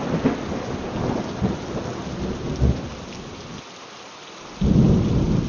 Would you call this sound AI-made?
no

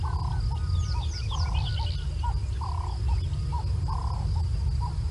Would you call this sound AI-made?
no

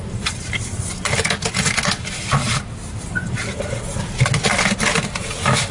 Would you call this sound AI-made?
no